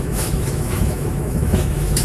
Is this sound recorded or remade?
remade